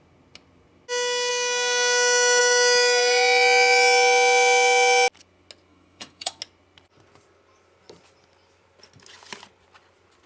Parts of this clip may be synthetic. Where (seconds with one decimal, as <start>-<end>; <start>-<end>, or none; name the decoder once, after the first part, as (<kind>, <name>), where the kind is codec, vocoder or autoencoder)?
5.7-6.4 (autoencoder, DAC-VAE)